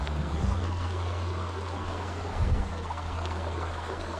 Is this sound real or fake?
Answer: fake